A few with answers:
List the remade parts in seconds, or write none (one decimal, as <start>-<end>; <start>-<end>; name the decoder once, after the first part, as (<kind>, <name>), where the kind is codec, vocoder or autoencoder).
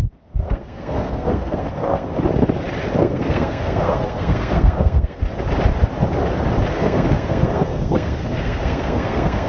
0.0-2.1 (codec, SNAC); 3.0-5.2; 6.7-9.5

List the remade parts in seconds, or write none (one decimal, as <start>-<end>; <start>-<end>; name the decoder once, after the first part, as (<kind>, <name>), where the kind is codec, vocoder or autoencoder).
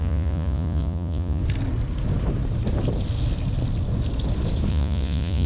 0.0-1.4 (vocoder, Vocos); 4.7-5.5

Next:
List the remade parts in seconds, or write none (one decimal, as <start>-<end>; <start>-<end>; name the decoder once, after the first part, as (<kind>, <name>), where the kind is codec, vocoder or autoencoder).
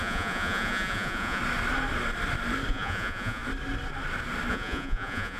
0.0-1.4 (vocoder, Vocos); 2.7-3.4; 4.5-5.4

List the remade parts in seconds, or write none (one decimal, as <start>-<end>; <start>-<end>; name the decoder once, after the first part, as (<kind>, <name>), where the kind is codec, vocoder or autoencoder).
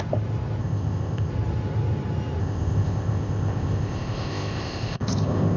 0.6-1.3 (codec, ZipCodec); 2.4-5.6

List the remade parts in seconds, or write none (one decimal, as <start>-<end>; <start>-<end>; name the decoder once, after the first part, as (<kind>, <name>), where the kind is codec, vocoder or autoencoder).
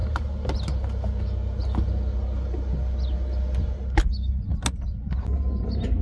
none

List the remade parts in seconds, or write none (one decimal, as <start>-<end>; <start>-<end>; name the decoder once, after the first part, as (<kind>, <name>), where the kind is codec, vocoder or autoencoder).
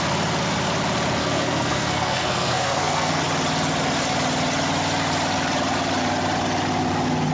1.2-3.2 (codec, SNAC)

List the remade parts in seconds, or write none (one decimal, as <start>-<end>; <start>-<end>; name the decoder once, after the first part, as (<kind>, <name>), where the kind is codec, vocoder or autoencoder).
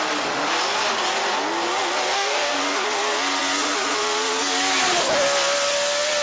2.1-2.6 (codec, DAC)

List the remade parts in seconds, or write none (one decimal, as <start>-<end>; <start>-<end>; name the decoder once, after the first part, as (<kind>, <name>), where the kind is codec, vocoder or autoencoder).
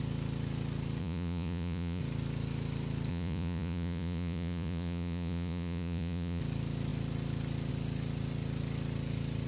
1.0-2.0 (vocoder, Vocos); 3.1-6.4